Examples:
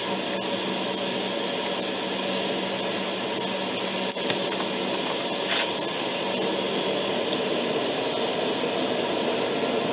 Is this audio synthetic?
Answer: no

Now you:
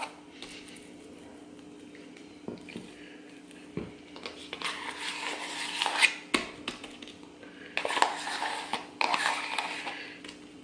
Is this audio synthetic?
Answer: no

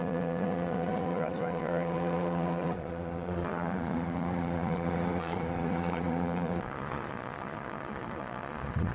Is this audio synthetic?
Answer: yes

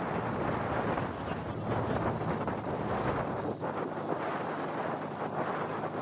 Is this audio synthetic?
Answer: no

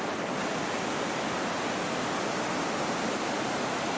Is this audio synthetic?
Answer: no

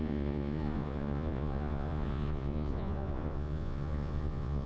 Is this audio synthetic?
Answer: yes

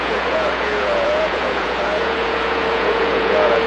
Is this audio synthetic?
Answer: yes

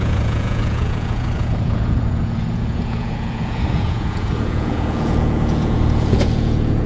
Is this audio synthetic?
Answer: yes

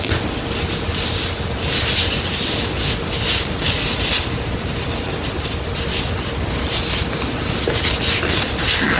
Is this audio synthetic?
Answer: no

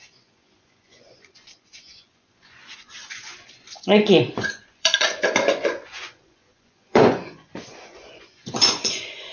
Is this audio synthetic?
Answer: yes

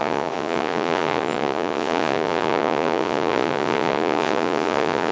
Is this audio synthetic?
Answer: yes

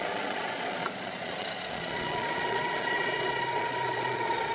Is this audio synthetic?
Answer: yes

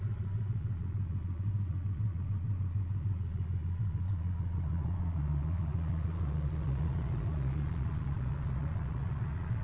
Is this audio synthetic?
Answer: yes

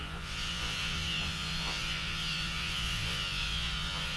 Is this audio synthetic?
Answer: yes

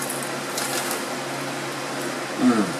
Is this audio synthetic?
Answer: no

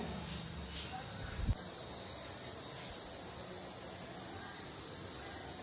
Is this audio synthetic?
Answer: no